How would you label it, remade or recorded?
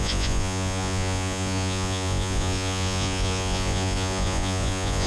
remade